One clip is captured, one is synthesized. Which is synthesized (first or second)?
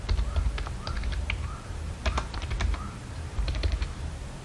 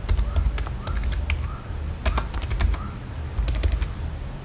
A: first